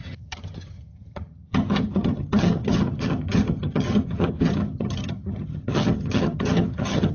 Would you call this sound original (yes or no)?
no